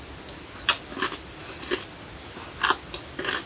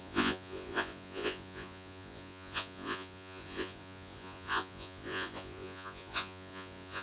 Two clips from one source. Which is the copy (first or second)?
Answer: second